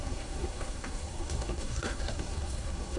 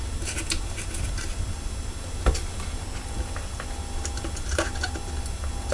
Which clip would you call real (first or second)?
second